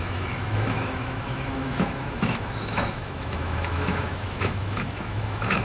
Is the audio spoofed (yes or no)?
yes